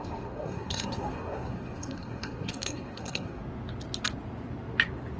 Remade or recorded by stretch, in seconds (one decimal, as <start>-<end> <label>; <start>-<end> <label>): 0.0-3.4 remade; 3.4-5.2 recorded